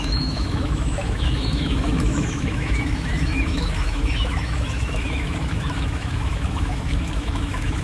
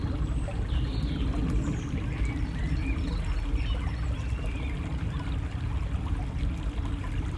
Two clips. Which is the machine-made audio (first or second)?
first